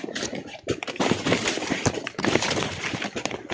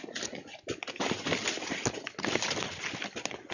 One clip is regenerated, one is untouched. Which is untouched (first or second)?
second